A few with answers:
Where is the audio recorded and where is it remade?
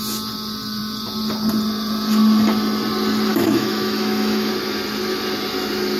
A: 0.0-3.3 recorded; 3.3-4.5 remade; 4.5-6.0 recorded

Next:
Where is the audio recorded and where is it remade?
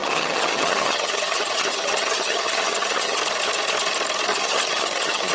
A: 0.0-3.2 remade; 3.2-4.3 recorded; 4.3-5.3 remade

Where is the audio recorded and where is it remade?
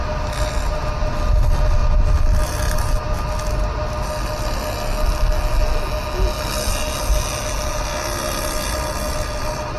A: 0.0-9.8 recorded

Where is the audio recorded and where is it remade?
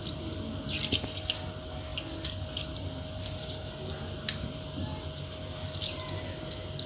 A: 0.0-6.9 recorded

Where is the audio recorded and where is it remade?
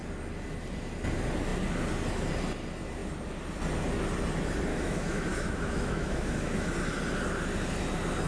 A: 0.0-4.7 recorded; 4.7-6.7 remade; 6.7-8.3 recorded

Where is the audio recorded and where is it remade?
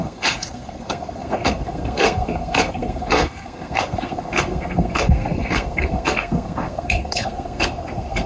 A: 0.0-8.3 remade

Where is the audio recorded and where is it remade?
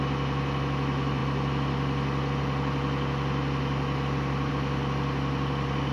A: 0.0-5.9 recorded